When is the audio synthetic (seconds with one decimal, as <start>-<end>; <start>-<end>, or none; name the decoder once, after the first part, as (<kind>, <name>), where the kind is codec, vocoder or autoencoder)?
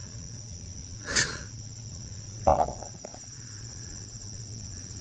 0.0-5.0 (vocoder, Vocos)